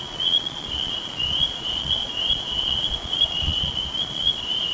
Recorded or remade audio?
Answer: remade